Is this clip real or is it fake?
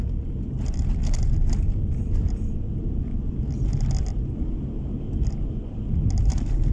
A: real